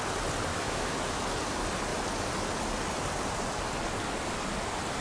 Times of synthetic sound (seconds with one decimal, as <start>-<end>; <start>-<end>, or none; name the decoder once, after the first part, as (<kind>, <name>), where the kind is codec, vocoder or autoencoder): 0.5-1.2 (autoencoder, DAC-VAE)